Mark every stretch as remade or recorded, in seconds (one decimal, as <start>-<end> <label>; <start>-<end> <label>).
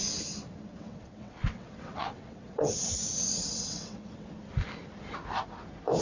0.0-0.7 recorded; 0.7-4.3 remade; 4.3-6.0 recorded